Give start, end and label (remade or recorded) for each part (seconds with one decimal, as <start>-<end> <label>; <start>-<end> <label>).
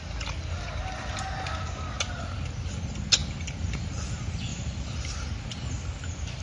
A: 0.0-4.5 recorded; 4.5-5.3 remade; 5.3-6.4 recorded